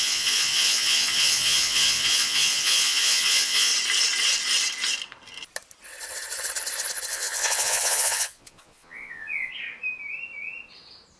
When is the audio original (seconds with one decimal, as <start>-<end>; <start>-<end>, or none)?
3.7-7.1; 9.5-11.2